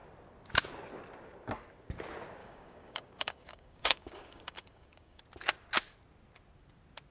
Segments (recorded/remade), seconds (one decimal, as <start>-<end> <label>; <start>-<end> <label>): 0.0-2.4 recorded; 2.4-5.2 remade; 5.2-7.1 recorded